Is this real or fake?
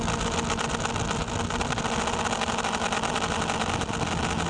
real